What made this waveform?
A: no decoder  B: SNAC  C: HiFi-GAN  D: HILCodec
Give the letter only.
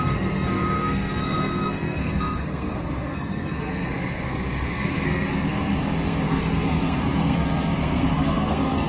B